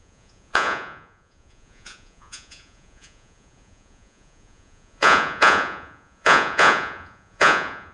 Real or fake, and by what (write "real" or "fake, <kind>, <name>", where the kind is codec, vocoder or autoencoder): fake, vocoder, Vocos